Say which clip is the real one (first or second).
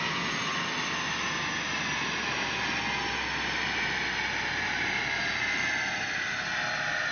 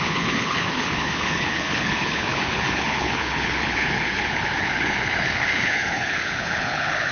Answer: first